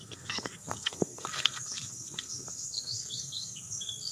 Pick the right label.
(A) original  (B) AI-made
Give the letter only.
B